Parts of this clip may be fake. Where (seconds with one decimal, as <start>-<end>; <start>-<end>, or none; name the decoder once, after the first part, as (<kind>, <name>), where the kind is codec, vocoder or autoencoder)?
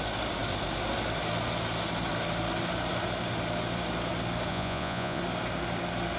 4.5-5.2 (vocoder, Vocos)